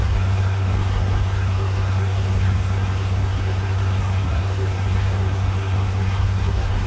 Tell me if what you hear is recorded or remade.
remade